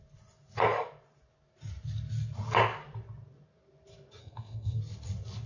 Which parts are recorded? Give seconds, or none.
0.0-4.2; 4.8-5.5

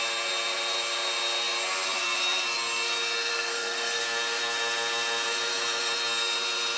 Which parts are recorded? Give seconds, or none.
0.0-3.3; 4.0-6.8

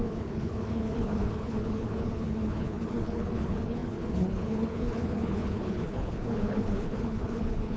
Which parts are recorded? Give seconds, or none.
none

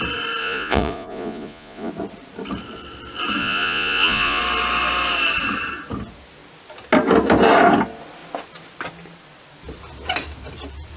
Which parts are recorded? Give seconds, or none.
0.0-0.4; 1.9-3.4; 4.4-11.0

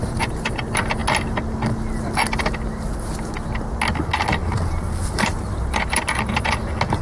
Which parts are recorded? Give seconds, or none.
0.0-4.4; 6.5-7.0